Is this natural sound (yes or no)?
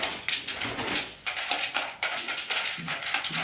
no